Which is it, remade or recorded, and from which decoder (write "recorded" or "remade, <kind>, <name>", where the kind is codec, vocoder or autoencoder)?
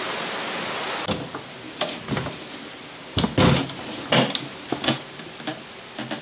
recorded